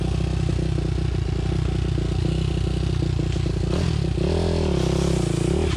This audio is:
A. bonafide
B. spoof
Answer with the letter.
A